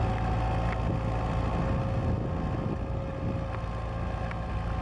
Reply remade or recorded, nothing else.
recorded